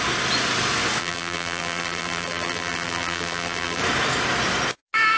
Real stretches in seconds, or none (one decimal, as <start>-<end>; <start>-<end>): 0.0-1.0; 3.8-5.2